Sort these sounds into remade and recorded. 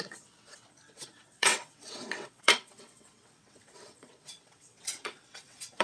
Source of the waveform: remade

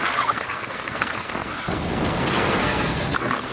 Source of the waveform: remade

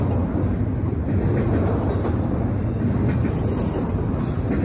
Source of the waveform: recorded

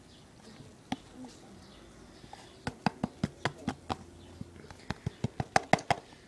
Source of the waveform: recorded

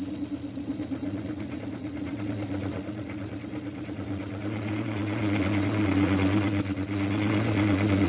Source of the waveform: remade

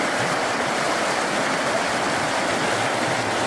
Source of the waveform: recorded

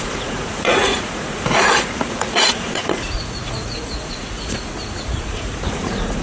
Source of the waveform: remade